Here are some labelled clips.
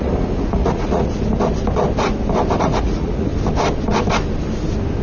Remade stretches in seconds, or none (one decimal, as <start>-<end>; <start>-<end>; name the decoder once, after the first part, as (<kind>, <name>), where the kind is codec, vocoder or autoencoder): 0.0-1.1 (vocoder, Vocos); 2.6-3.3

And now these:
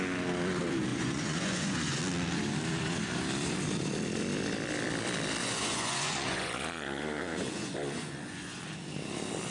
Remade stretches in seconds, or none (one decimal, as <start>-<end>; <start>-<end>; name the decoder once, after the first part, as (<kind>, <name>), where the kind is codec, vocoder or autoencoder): 0.9-2.0 (vocoder, Vocos); 5.4-8.6

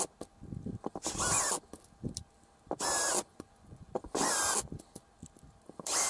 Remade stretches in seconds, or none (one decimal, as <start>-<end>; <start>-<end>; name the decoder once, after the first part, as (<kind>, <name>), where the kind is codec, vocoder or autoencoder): 3.3-4.3 (vocoder, Vocos)

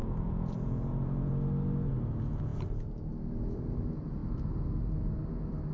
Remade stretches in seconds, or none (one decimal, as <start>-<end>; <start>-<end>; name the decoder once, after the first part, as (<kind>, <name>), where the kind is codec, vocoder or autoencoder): 0.0-1.3 (vocoder, Vocos)

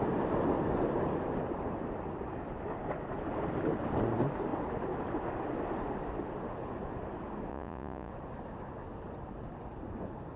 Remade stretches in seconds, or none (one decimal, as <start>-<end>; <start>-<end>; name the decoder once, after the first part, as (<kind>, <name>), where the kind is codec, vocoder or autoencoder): 7.5-8.1 (vocoder, Vocos)